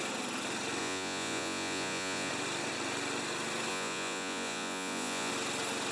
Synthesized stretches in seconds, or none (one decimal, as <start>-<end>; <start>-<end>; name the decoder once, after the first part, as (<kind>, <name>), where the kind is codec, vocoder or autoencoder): 0.8-2.3 (vocoder, Vocos); 3.7-5.3